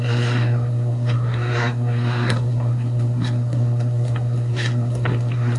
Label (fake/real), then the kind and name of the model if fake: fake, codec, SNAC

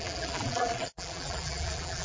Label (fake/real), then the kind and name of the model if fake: fake, vocoder, BigVGAN v2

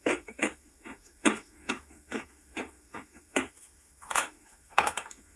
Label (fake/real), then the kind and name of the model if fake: fake, autoencoder, DAC-VAE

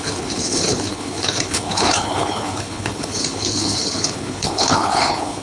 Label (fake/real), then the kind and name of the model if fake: fake, codec, HILCodec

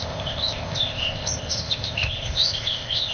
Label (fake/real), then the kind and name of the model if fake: fake, codec, ZipCodec